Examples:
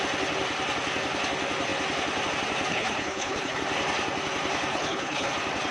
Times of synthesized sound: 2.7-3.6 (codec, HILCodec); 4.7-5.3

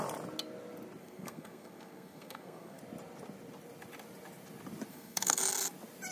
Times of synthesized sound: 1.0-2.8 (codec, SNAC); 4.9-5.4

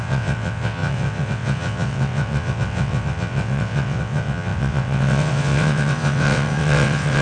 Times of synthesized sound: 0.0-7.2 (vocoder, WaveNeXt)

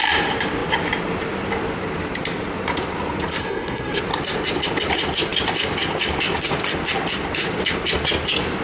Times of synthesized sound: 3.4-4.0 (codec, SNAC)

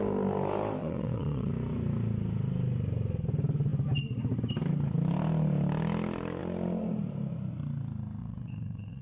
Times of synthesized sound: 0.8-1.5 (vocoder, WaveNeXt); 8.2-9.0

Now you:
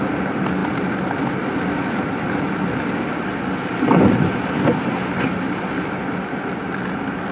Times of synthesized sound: none

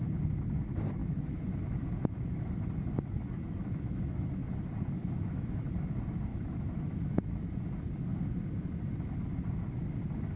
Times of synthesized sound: 1.0-4.3 (autoencoder, DAC-VAE); 5.0-5.7; 6.3-7.5

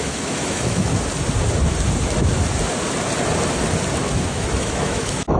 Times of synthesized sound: 0.0-0.9 (autoencoder, DAC-VAE); 4.1-5.4